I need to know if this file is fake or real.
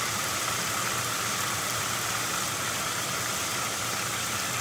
fake